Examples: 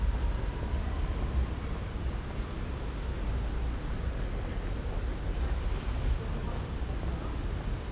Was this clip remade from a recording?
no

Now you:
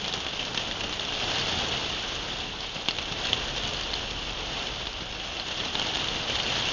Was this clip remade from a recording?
yes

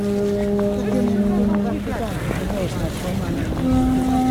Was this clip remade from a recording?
no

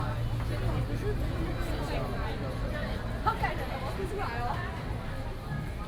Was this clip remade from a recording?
no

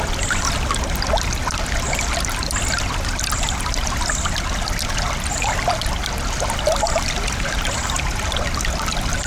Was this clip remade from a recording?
no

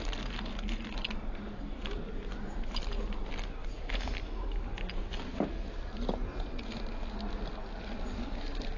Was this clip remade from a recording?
no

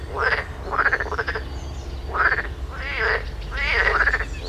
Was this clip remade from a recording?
no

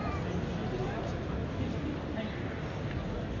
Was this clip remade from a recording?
no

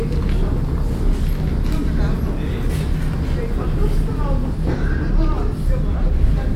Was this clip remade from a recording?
no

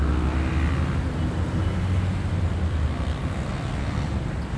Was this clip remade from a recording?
yes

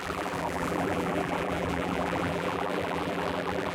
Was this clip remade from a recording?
yes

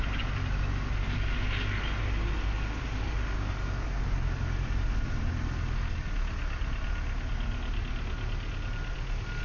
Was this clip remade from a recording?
no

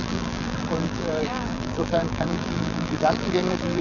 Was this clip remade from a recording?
yes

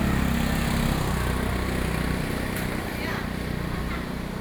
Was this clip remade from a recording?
no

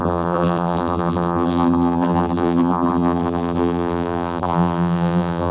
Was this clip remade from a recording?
yes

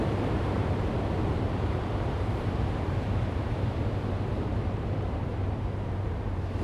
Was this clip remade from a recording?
yes